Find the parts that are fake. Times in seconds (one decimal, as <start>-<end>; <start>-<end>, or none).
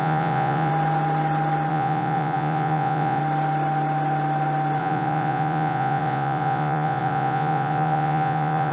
0.0-0.7; 1.7-3.2; 4.8-8.7